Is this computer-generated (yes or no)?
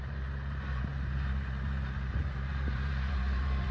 yes